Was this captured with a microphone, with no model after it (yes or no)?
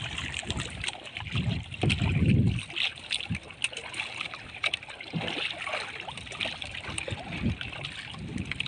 yes